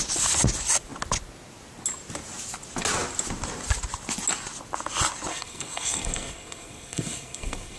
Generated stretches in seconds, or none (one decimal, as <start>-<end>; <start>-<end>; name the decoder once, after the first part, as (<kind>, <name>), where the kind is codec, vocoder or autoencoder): 5.3-7.8 (codec, SNAC)